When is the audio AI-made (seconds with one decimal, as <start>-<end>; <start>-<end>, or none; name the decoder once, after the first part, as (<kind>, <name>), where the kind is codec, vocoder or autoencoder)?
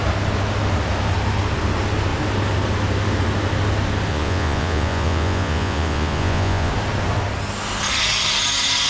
4.1-6.7 (vocoder, Vocos)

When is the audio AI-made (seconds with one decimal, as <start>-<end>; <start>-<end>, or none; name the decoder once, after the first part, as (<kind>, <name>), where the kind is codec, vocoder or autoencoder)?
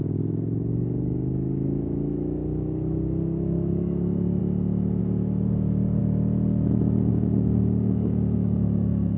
0.0-4.4 (codec, DAC); 5.0-6.0; 7.1-9.2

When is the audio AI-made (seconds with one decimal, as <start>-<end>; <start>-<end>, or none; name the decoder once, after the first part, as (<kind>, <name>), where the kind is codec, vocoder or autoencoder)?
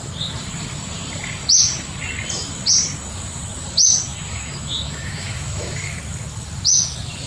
4.1-6.0 (autoencoder, DAC-VAE)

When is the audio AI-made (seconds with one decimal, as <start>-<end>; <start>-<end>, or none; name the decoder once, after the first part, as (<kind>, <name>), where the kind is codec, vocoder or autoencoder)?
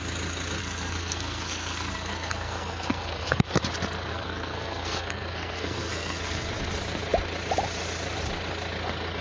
0.6-3.6 (codec, SNAC); 4.1-6.5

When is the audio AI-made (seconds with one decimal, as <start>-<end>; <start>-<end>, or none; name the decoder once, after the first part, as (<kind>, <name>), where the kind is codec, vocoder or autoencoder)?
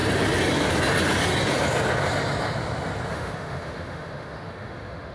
3.1-5.1 (autoencoder, DAC-VAE)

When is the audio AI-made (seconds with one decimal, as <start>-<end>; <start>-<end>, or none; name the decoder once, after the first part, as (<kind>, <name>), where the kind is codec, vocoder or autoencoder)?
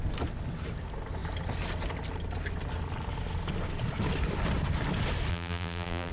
5.3-6.1 (vocoder, BigVGAN v2)